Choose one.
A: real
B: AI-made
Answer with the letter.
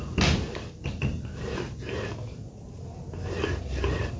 A